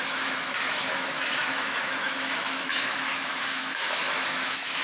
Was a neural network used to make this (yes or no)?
yes